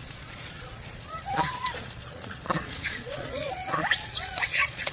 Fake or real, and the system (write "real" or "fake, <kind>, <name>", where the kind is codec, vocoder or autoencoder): fake, vocoder, Vocos